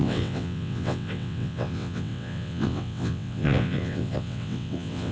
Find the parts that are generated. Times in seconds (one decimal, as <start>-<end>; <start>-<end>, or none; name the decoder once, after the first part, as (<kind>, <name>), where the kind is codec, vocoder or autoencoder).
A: 0.0-5.1 (vocoder, WaveNeXt)